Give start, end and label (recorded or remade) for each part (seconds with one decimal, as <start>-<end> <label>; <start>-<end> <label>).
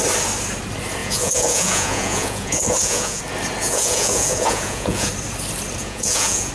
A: 0.0-1.0 recorded; 1.0-3.2 remade; 3.2-3.6 recorded; 3.6-5.1 remade; 5.1-5.8 recorded; 5.8-6.5 remade